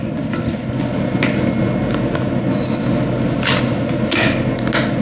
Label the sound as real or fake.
real